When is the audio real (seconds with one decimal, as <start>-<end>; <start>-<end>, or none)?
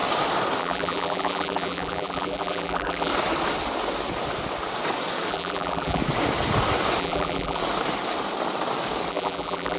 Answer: 0.0-0.6; 3.1-5.3; 6.0-7.0; 7.6-9.1